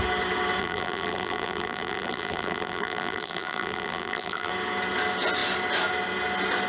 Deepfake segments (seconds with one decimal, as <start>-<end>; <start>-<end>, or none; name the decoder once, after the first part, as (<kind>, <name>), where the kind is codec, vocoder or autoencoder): 0.6-4.5 (vocoder, BigVGAN v2)